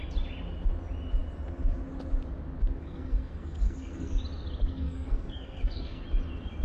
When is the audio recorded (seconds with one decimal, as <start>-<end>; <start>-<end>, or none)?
0.0-2.8; 4.2-4.7; 6.0-6.6